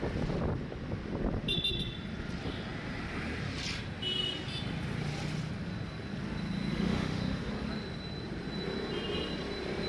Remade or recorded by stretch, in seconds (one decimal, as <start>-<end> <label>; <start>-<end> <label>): 0.0-6.7 recorded; 6.7-7.5 remade; 7.5-9.9 recorded